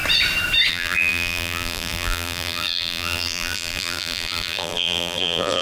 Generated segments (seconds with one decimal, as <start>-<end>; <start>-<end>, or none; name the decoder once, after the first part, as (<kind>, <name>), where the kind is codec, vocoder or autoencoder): 0.7-5.6 (vocoder, BigVGAN v2)